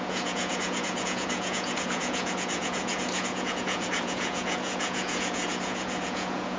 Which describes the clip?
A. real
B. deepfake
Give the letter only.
B